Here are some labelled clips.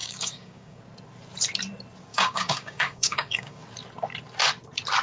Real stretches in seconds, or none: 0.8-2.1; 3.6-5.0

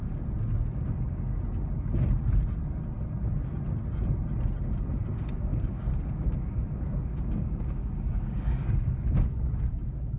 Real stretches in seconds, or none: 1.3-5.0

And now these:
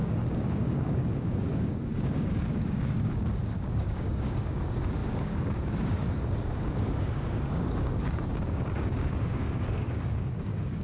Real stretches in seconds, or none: none

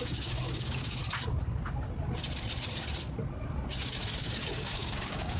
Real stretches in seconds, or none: 1.0-4.2